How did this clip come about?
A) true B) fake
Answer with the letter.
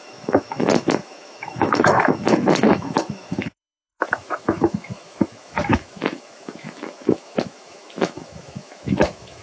B